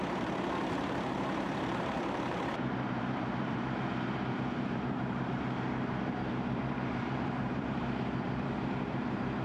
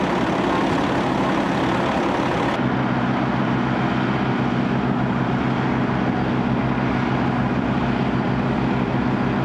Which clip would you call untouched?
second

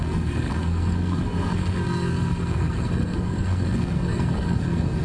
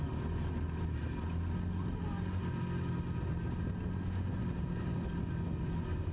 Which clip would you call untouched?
second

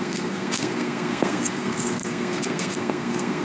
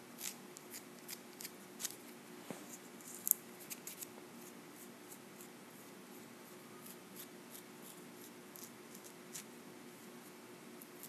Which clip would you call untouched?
second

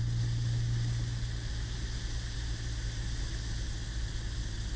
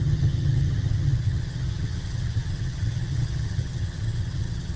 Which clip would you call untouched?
first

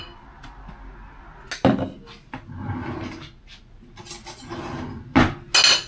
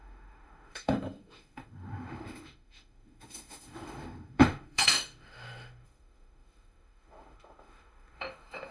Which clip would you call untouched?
first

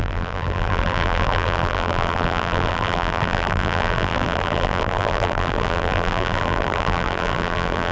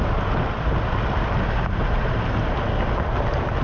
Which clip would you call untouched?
second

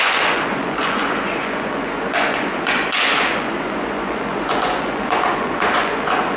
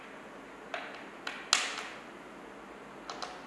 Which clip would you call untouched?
second